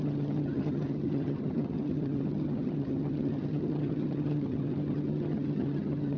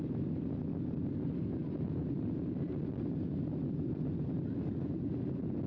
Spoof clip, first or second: first